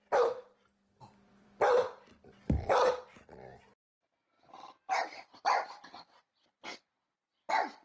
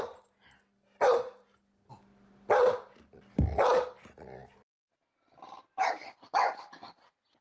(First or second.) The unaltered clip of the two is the second